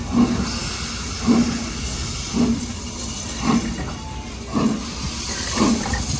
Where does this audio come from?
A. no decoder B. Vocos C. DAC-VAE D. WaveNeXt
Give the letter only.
A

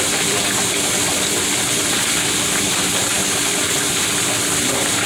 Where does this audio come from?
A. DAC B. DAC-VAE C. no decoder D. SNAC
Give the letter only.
C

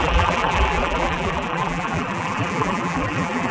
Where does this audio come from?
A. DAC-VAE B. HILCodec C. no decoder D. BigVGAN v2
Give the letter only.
D